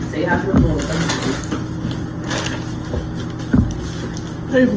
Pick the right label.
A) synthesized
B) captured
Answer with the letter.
B